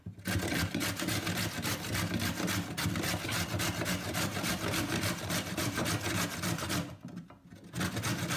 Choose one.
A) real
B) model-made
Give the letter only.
A